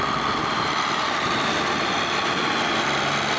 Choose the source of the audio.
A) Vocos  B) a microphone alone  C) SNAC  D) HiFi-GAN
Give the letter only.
B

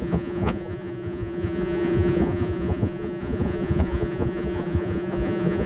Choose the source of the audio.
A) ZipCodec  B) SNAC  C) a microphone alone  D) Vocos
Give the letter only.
D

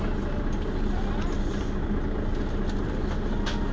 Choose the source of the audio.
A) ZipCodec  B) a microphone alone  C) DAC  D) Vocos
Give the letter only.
B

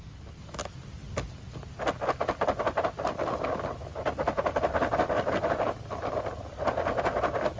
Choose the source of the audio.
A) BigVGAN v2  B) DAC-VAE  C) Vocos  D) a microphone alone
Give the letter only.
D